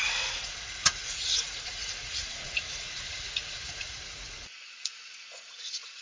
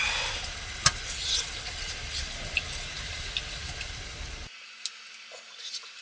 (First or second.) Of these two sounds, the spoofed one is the first